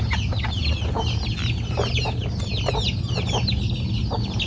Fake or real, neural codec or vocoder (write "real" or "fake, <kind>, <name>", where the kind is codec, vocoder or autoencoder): real